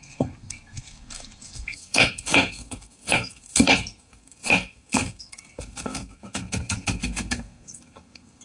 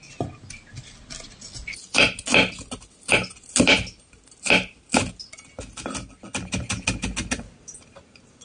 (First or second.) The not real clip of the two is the first